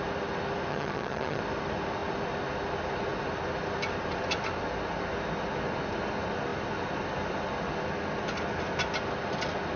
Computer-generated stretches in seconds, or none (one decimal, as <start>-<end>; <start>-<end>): 0.7-1.4